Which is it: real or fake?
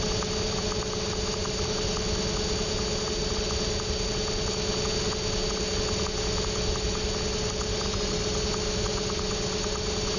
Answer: real